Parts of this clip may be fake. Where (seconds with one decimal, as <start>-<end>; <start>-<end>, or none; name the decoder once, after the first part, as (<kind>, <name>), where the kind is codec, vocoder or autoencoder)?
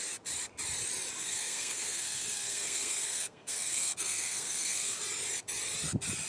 1.2-5.0 (codec, SNAC)